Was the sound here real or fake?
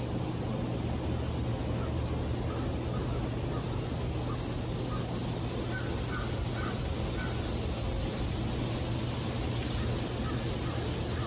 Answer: real